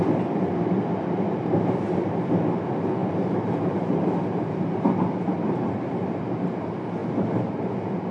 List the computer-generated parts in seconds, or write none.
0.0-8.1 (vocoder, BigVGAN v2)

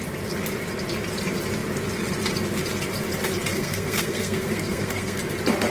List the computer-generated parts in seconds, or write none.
3.5-5.2 (codec, SNAC)